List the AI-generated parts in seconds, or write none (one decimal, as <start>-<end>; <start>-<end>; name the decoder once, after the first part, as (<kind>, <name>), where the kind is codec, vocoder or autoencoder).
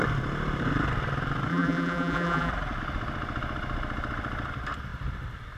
1.5-2.5 (vocoder, BigVGAN v2)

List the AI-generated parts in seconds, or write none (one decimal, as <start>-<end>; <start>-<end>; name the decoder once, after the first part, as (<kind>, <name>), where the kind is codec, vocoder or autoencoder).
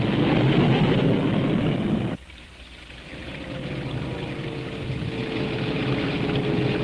none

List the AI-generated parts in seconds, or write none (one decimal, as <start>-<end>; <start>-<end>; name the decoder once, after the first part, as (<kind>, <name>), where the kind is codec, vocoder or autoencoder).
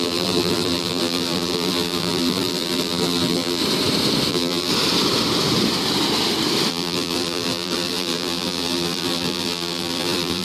0.0-3.6 (vocoder, BigVGAN v2); 4.3-4.7; 6.7-10.4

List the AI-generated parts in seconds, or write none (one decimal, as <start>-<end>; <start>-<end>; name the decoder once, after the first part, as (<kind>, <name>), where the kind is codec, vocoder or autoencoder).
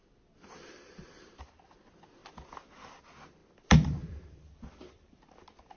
2.2-2.7 (vocoder, BigVGAN v2); 3.4-5.3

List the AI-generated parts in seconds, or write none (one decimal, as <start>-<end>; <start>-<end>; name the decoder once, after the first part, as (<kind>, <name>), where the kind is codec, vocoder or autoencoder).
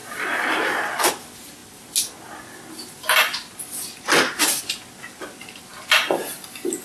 0.0-1.1 (vocoder, BigVGAN v2)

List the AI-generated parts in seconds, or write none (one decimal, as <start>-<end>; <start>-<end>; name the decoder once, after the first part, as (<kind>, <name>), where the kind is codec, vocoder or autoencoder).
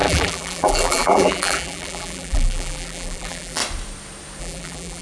0.0-3.6 (vocoder, BigVGAN v2); 4.4-5.0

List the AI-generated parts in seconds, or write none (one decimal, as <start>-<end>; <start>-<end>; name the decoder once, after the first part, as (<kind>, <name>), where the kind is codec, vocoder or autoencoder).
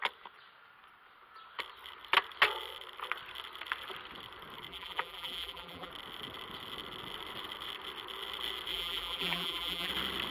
4.7-5.9 (vocoder, BigVGAN v2); 8.7-9.9